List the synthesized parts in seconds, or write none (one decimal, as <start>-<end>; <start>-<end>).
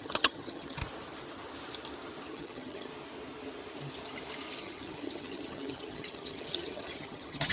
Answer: 0.0-0.8; 2.3-2.9; 4.6-7.5